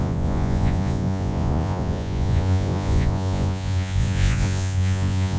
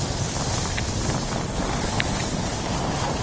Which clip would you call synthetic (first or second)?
first